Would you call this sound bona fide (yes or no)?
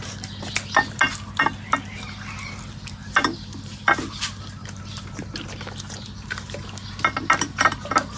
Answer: yes